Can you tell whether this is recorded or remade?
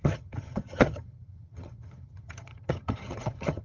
remade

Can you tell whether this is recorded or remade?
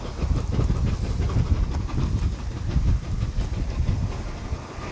recorded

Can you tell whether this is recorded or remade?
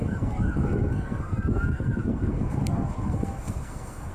remade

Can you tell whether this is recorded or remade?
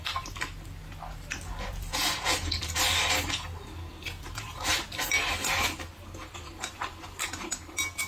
recorded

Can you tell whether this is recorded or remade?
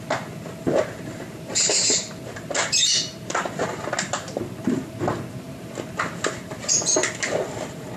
recorded